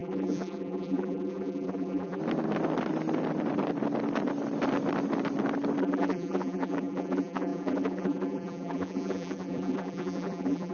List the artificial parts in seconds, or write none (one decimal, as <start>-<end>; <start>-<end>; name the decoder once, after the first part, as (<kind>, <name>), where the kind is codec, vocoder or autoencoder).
0.0-2.2 (vocoder, BigVGAN v2); 5.8-10.7